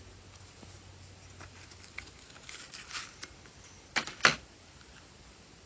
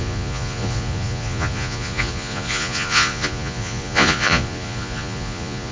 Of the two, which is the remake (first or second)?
second